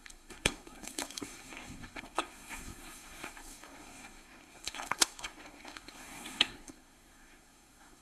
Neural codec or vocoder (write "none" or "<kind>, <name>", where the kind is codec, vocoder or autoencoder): codec, SNAC